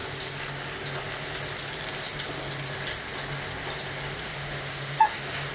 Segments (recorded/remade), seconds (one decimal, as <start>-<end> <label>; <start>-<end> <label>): 0.0-4.2 recorded; 4.2-5.5 remade